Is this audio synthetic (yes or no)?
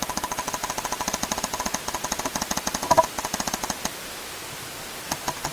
no